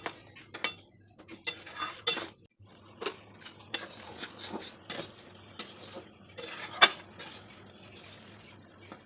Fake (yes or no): no